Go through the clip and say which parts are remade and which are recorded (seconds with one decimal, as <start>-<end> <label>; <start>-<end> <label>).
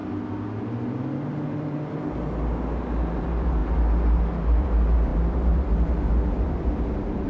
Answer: 0.0-7.3 recorded